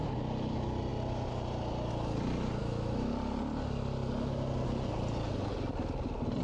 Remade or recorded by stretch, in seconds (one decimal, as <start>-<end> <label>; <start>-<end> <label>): 0.0-2.6 recorded; 2.6-3.1 remade; 3.1-6.4 recorded